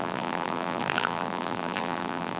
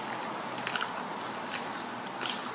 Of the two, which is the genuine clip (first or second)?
second